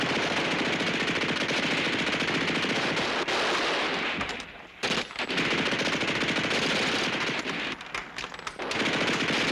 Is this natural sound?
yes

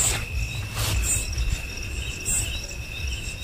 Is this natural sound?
yes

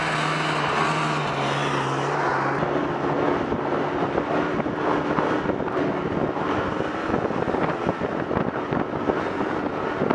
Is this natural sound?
yes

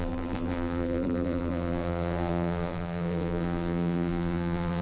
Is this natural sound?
no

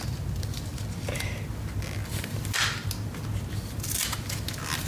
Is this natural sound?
yes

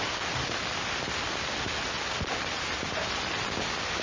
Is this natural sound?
no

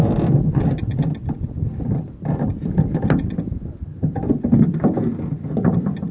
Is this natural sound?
yes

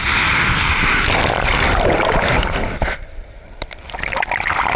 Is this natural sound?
no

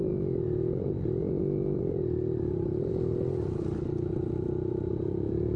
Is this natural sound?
yes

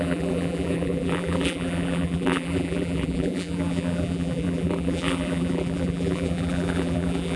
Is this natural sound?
no